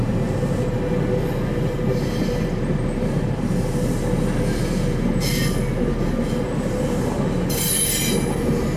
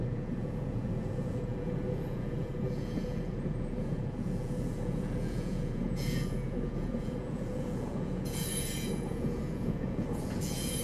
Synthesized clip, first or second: second